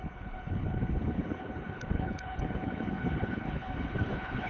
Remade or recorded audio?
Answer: remade